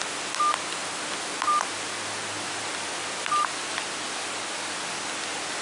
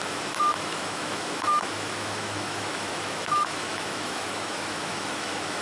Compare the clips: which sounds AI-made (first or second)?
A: second